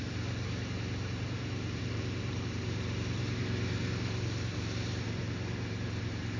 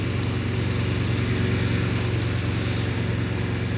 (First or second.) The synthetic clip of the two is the first